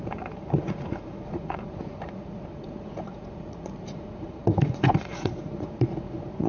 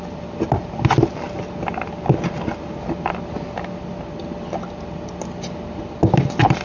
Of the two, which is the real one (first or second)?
second